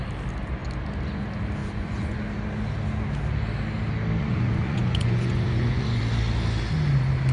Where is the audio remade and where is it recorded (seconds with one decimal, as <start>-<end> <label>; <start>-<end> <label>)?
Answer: 0.0-1.6 recorded; 1.6-2.2 remade; 2.2-4.2 recorded; 4.2-6.0 remade; 6.0-7.3 recorded